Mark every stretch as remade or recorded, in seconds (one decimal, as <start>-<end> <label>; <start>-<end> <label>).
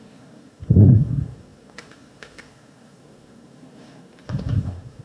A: 0.0-5.0 remade